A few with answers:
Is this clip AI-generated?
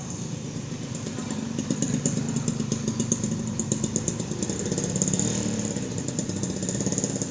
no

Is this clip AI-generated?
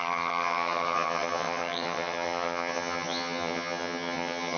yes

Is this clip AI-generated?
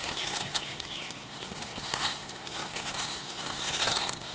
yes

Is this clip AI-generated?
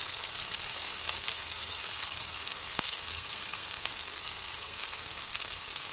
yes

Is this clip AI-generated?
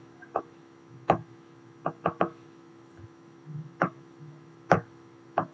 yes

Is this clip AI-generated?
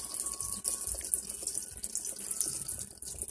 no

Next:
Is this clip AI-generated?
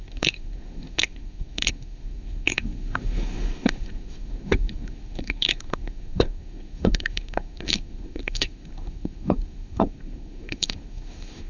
yes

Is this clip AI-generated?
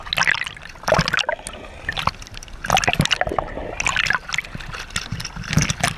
no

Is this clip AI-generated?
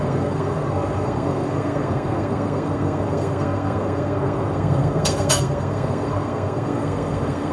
yes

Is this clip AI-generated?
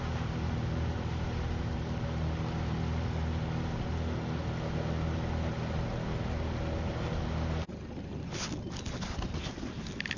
no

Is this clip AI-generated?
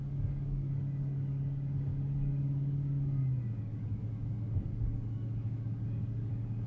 yes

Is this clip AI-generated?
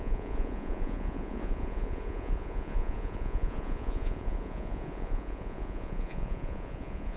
yes